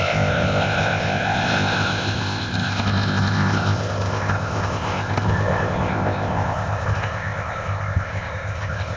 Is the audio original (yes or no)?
no